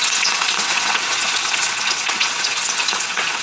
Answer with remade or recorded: remade